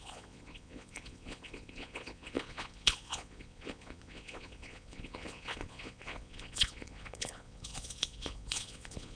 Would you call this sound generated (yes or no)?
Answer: yes